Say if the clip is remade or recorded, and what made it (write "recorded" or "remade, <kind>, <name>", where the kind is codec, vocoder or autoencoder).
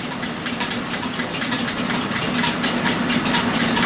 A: recorded